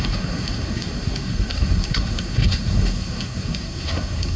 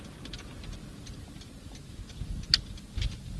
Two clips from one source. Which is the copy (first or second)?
first